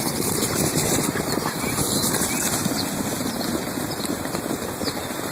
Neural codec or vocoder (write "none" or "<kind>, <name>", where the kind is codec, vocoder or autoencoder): none